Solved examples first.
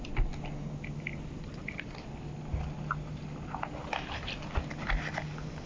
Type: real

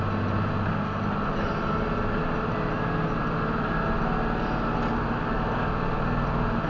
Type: real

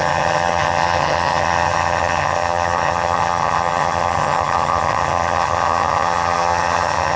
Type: fake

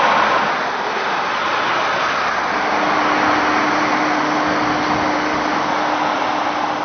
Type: real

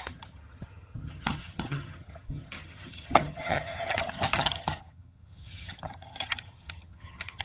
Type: fake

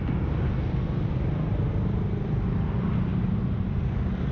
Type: real